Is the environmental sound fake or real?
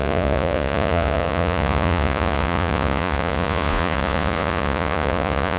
fake